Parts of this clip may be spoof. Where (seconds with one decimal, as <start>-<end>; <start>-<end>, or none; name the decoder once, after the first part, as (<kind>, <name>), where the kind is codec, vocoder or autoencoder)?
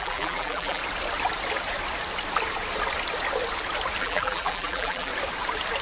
0.0-0.8 (vocoder, BigVGAN v2); 4.0-5.1